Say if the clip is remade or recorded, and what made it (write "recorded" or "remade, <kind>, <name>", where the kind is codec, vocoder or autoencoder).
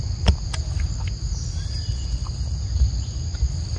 recorded